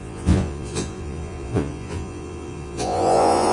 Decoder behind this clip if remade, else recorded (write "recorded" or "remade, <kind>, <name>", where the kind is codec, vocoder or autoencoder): remade, vocoder, Vocos